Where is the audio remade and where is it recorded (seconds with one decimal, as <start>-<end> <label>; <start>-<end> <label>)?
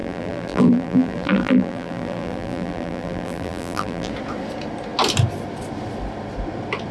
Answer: 0.0-4.1 remade; 4.1-6.9 recorded